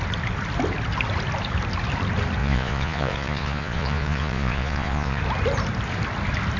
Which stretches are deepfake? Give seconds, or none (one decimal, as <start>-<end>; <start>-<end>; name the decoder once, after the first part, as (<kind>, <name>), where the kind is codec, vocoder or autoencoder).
2.4-5.2 (vocoder, Vocos)